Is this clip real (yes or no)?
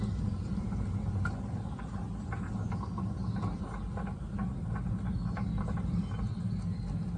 yes